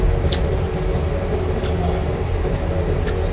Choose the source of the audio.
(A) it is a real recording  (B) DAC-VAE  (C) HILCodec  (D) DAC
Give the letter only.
A